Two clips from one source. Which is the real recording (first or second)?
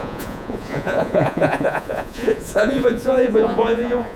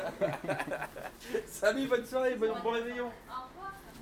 second